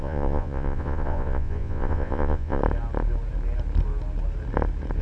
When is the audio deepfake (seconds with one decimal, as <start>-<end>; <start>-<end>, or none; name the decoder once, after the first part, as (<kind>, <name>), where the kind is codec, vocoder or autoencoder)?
0.0-2.6 (vocoder, Vocos)